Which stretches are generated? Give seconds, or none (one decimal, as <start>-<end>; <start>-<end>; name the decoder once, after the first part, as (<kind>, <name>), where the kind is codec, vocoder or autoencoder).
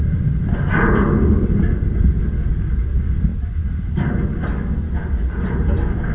none